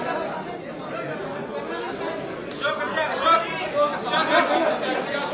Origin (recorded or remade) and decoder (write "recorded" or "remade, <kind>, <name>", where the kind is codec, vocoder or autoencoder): recorded